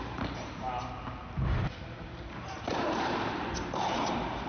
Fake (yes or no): yes